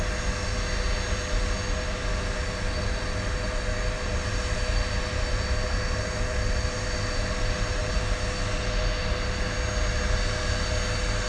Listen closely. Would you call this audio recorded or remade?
recorded